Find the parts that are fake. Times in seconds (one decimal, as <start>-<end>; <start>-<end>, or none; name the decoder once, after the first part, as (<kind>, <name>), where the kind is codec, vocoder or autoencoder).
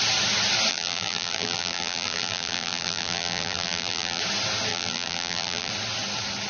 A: 0.7-4.2 (vocoder, BigVGAN v2); 4.7-5.7